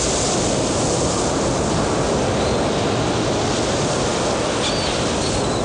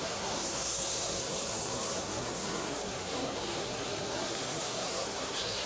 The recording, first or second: first